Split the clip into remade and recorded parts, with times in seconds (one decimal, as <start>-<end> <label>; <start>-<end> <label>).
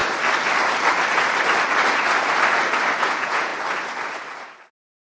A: 0.0-3.0 recorded; 3.0-3.5 remade; 3.5-5.0 recorded